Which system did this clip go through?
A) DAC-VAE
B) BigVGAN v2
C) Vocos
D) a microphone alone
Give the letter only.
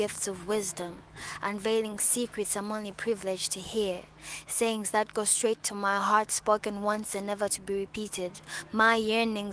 A